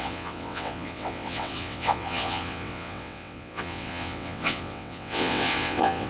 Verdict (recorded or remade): remade